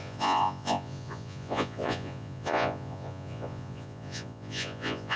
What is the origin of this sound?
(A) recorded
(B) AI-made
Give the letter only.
B